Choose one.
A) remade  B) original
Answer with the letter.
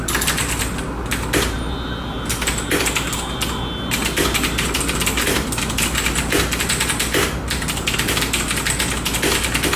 B